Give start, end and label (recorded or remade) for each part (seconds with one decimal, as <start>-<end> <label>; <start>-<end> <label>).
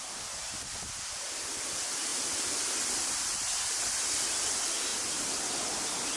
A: 0.0-6.2 recorded